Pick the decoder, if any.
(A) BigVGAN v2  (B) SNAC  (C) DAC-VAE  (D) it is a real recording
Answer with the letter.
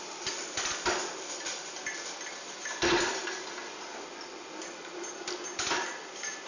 D